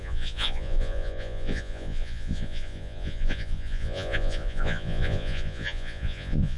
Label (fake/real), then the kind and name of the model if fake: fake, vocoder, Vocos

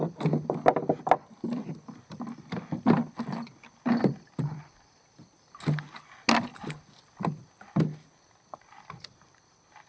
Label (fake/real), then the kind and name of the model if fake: real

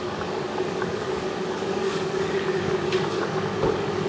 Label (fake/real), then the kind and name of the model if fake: fake, codec, DAC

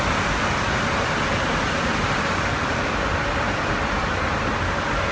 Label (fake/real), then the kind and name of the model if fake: real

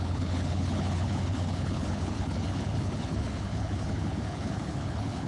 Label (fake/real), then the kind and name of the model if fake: fake, codec, HILCodec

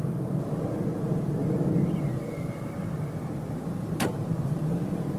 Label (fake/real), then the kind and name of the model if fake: real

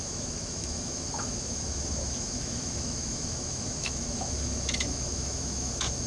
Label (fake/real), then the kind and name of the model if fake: fake, autoencoder, DAC-VAE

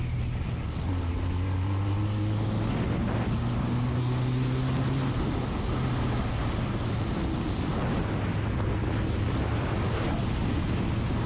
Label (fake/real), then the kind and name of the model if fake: real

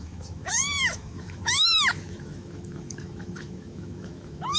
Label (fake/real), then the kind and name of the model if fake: fake, autoencoder, DAC-VAE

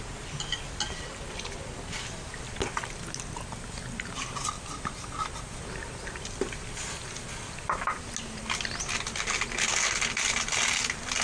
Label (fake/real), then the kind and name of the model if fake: real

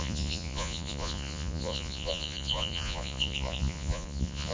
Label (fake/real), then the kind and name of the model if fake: fake, vocoder, Vocos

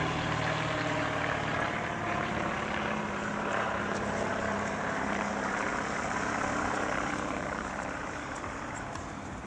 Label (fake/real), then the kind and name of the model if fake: fake, vocoder, BigVGAN v2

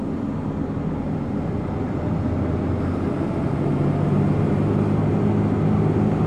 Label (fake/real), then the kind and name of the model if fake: real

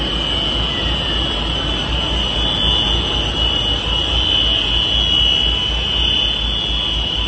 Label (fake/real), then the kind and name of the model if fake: real